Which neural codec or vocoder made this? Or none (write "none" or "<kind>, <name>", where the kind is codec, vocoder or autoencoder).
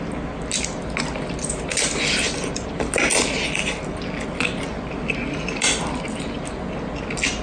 none